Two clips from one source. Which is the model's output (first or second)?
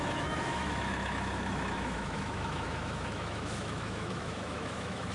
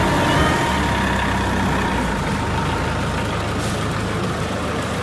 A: first